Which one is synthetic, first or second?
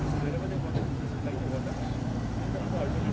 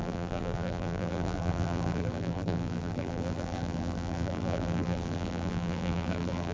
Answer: second